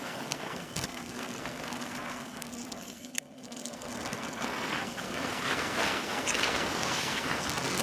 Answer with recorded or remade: remade